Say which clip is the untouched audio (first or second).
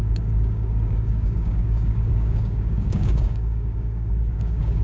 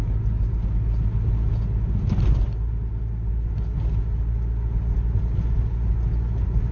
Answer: second